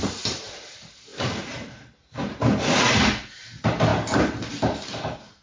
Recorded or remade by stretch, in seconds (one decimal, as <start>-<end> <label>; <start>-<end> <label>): 0.0-5.4 recorded